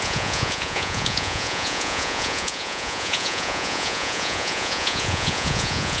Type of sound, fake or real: fake